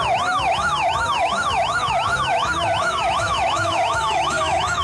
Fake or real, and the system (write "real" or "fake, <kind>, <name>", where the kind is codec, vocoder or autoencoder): fake, autoencoder, DAC-VAE